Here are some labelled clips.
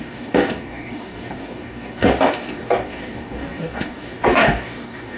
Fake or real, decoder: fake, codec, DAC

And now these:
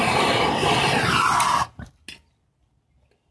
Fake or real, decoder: real